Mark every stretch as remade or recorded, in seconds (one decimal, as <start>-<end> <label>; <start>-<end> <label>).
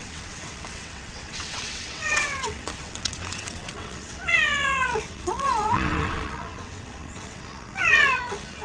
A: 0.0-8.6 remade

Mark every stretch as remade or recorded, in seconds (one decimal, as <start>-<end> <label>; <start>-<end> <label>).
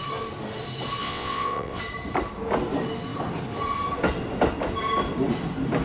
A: 0.0-1.0 recorded; 1.0-1.8 remade; 1.8-5.8 recorded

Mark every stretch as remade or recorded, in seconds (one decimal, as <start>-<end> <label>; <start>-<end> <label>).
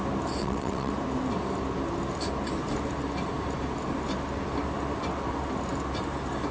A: 0.0-0.4 recorded; 0.4-0.9 remade; 0.9-6.5 recorded